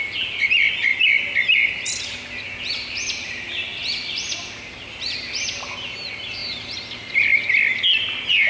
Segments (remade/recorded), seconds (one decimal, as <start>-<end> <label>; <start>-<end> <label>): 0.0-8.5 recorded